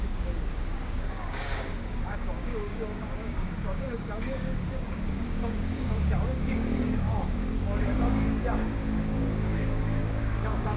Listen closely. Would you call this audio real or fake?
fake